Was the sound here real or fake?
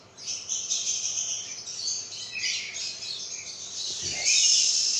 fake